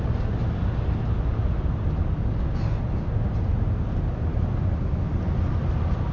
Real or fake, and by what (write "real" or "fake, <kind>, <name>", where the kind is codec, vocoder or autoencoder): real